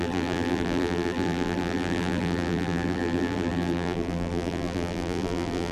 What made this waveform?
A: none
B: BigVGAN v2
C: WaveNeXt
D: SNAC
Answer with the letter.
B